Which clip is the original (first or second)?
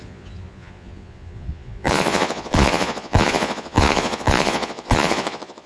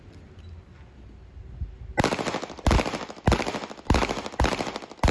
second